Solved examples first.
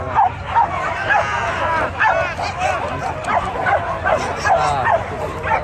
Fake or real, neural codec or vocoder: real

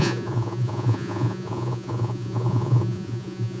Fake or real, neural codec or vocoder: fake, vocoder, Vocos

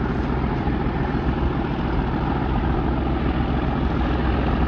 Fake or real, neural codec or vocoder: real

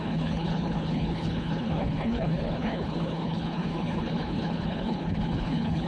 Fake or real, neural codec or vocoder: fake, codec, HILCodec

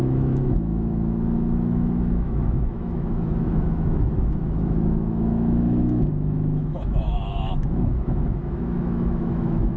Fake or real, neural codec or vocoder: fake, autoencoder, DAC-VAE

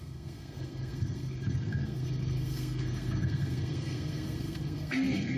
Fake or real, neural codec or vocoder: fake, codec, SNAC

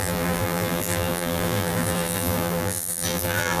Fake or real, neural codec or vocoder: fake, vocoder, BigVGAN v2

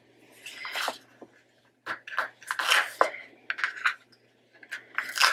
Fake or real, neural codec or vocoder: real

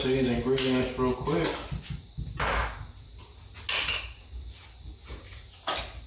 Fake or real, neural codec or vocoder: real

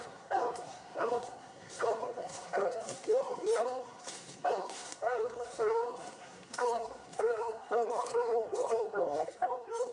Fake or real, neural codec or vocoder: fake, codec, SNAC